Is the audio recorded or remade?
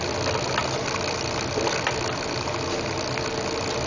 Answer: recorded